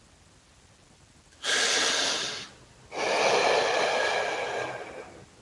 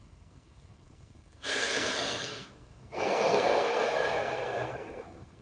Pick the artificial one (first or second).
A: second